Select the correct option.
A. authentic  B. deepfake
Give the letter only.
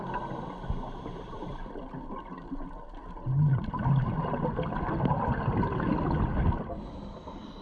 A